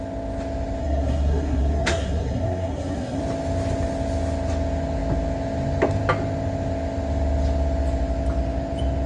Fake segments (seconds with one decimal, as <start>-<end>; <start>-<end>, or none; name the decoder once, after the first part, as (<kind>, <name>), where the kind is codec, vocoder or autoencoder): 0.8-3.2 (codec, SNAC)